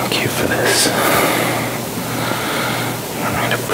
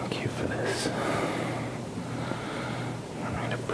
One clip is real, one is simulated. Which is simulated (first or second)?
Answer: second